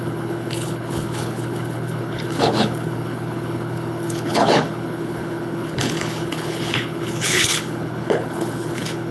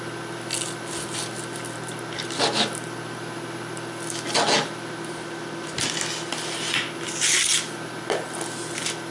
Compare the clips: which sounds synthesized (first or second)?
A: first